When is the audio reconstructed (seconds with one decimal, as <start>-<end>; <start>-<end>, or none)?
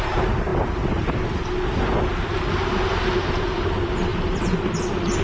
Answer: none